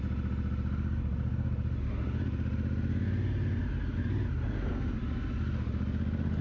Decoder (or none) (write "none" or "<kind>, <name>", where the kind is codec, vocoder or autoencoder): none